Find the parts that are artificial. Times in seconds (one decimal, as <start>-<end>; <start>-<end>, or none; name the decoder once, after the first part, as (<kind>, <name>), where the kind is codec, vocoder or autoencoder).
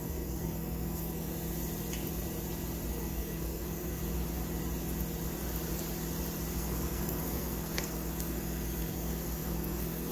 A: 0.0-1.3 (codec, SNAC); 2.9-4.0; 6.5-10.1